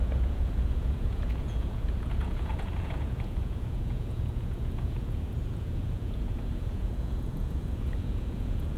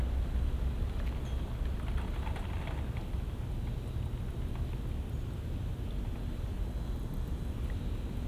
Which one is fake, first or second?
first